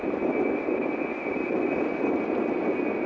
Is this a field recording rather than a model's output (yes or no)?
yes